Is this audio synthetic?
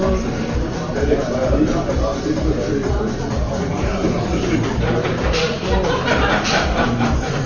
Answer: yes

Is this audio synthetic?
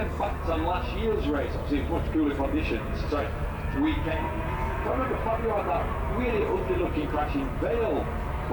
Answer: no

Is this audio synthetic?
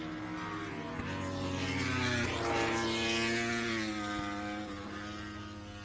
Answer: no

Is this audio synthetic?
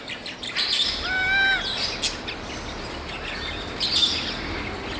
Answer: no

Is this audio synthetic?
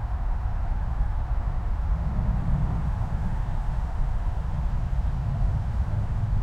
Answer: yes